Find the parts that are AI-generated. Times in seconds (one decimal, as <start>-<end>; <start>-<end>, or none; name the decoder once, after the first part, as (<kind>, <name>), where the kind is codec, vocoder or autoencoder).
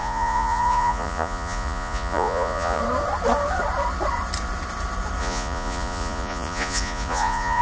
0.0-2.8 (vocoder, Vocos); 5.2-7.6